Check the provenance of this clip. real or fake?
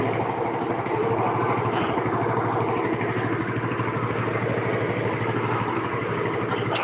real